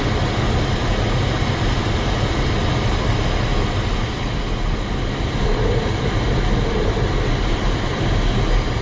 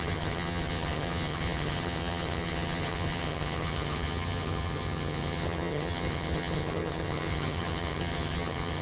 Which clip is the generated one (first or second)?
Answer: second